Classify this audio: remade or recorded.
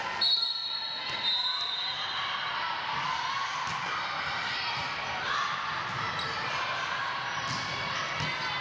recorded